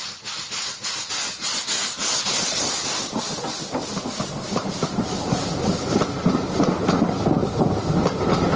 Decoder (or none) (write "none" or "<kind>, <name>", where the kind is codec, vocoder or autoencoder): none